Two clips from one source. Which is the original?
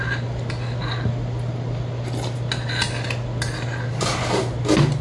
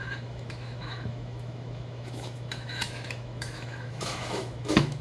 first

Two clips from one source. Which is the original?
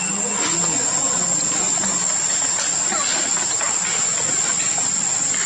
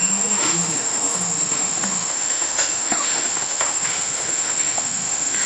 first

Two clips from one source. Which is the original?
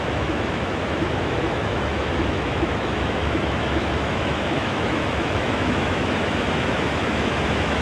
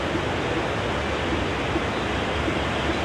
second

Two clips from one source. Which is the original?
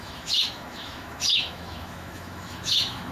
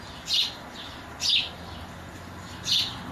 second